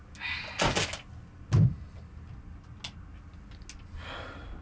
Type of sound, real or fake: real